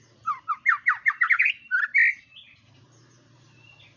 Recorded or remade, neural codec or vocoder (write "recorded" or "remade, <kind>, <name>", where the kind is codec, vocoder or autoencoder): recorded